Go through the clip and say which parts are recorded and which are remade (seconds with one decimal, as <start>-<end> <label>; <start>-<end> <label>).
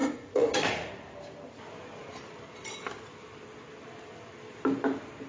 0.0-0.9 remade; 0.9-5.3 recorded